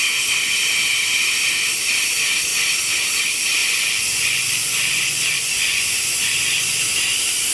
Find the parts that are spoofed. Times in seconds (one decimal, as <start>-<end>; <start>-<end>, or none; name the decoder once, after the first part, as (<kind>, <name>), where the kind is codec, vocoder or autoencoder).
3.6-7.0 (vocoder, Vocos)